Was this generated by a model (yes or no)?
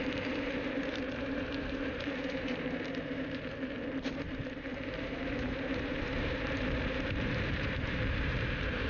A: yes